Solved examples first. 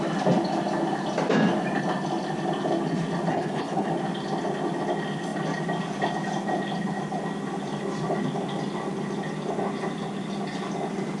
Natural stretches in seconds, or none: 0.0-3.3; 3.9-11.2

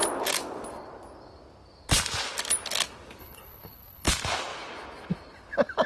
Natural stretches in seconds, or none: 0.0-3.2; 4.1-5.9

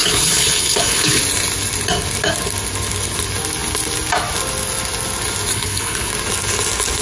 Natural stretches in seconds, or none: 1.2-5.5; 6.1-7.0

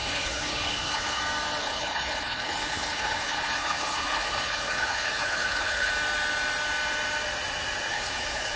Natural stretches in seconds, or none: 1.2-1.6; 5.9-7.9

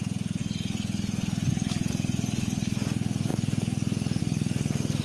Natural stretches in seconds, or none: 0.0-5.0

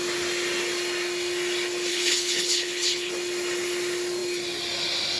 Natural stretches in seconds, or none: 0.0-1.9; 3.1-5.2

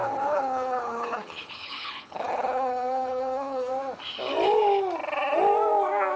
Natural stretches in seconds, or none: 3.7-6.2

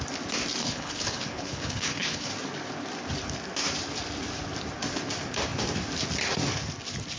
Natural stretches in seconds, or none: 0.0-0.6; 2.3-7.2